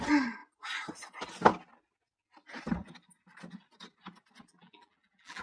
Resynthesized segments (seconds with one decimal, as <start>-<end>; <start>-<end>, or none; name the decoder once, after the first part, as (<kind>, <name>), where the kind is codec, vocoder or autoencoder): 4.5-5.4 (vocoder, BigVGAN v2)